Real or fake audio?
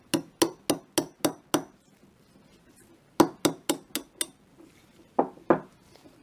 real